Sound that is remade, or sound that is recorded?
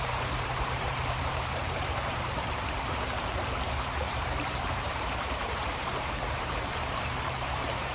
remade